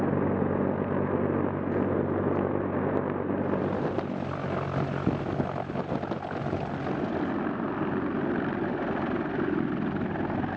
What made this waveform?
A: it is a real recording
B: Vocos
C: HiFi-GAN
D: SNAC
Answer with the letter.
A